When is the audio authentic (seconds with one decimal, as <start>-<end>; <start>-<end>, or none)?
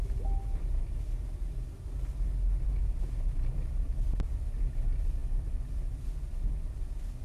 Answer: 0.0-7.2